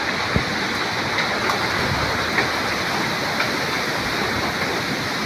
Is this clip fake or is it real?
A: real